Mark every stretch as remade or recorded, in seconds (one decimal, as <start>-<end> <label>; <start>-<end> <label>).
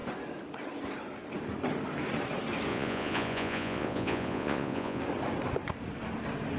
0.0-2.7 recorded; 2.7-5.0 remade; 5.0-6.6 recorded